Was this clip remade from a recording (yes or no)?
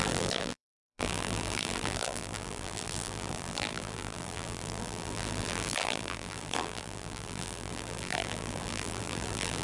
yes